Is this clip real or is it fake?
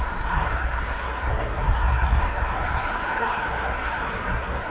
fake